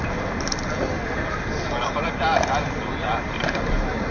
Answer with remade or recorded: recorded